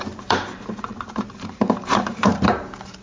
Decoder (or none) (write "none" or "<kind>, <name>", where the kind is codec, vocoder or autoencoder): vocoder, BigVGAN v2